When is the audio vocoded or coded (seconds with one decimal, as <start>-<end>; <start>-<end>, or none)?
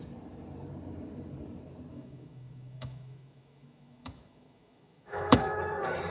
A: 1.9-5.6